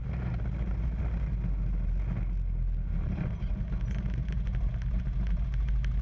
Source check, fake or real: real